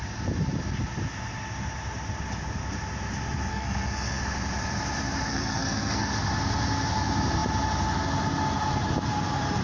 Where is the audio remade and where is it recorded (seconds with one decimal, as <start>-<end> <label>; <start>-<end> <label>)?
0.0-3.5 recorded; 3.5-4.2 remade; 4.2-5.3 recorded; 5.3-6.1 remade; 6.1-9.6 recorded